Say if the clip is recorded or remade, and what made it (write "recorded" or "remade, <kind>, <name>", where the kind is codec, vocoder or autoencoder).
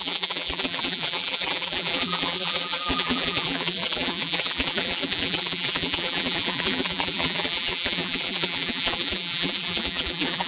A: remade, vocoder, BigVGAN v2